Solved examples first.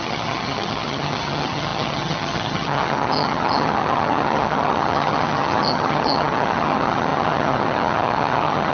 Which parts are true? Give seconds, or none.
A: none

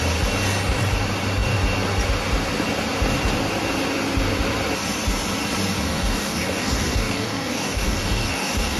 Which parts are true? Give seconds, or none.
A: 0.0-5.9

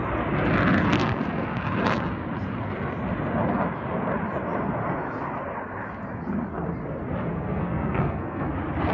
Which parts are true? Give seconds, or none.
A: 0.0-0.9; 1.6-7.3; 8.5-8.9

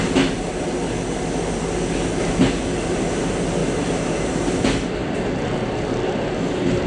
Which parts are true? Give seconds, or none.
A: 0.0-3.6; 4.5-6.9

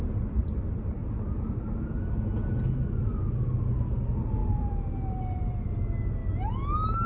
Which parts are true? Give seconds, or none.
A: 0.0-0.4; 1.1-4.4; 5.7-7.1

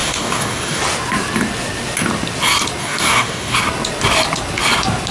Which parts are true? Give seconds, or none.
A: 0.8-2.8; 3.6-5.1

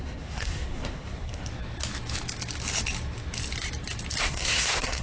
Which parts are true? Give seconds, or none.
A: 1.5-4.2